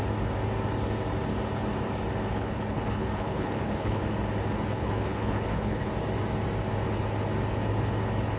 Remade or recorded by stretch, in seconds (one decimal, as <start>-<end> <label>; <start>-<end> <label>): 0.0-2.3 recorded; 2.3-4.0 remade; 4.0-4.7 recorded; 4.7-5.9 remade; 5.9-8.4 recorded